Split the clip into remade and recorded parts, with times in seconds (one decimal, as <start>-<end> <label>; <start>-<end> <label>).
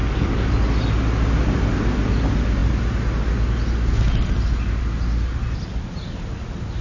0.0-0.5 remade; 0.5-6.8 recorded